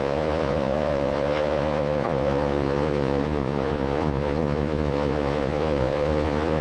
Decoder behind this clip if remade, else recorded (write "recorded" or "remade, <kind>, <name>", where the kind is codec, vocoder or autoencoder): remade, vocoder, Vocos